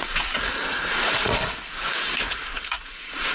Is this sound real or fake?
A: fake